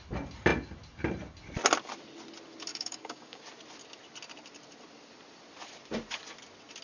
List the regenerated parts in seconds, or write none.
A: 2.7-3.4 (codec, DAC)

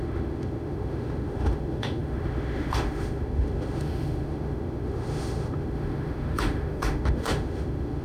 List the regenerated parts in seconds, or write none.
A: 0.0-8.0 (autoencoder, DAC-VAE)

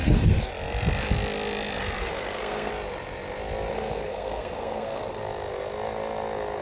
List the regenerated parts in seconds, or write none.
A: 0.0-0.5 (codec, SNAC); 2.0-2.7; 3.7-5.2

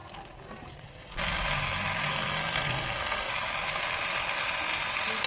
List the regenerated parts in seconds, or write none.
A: 2.1-3.3 (codec, SNAC)

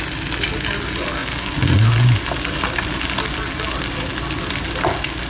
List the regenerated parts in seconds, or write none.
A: none

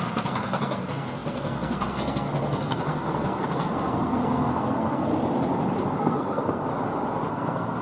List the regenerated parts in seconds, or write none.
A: 0.0-5.1 (codec, SNAC); 6.0-6.7; 7.3-7.8